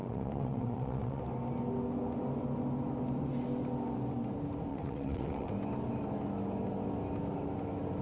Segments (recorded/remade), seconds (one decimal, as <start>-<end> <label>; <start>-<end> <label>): 0.0-1.2 remade; 1.2-4.7 recorded; 4.7-5.5 remade; 5.5-8.0 recorded